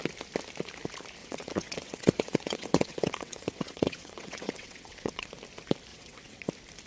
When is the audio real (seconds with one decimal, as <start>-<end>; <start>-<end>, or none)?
0.0-1.2; 5.3-5.9; 6.5-6.9